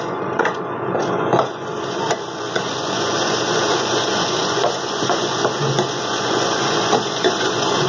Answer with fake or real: fake